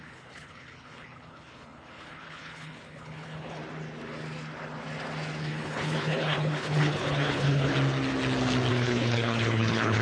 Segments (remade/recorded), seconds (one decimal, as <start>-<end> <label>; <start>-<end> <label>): 0.0-3.6 remade; 3.6-5.4 recorded; 5.4-7.7 remade; 7.7-8.7 recorded; 8.7-10.0 remade

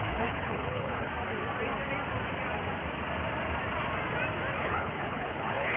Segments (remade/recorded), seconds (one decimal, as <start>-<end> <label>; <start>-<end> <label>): 0.0-1.1 remade; 1.1-4.6 recorded; 4.6-5.8 remade

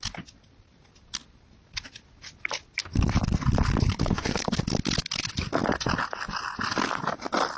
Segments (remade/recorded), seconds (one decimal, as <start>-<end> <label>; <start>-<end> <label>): 0.0-3.9 recorded; 3.9-4.6 remade; 4.6-7.6 recorded

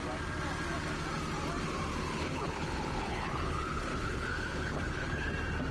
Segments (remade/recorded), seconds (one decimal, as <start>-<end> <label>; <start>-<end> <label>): 0.0-1.9 recorded; 1.9-5.3 remade; 5.3-5.7 recorded